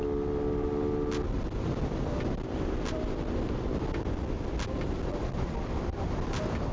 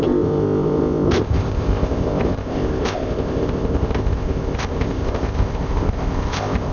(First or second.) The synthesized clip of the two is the second